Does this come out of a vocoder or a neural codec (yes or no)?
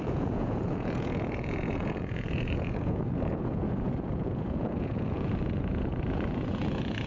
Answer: yes